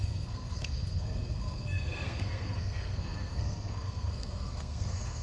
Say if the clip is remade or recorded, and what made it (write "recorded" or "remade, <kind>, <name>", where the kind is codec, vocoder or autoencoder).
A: remade, codec, SNAC